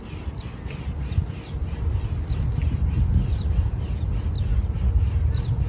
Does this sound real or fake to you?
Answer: real